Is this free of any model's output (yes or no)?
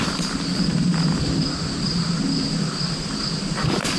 no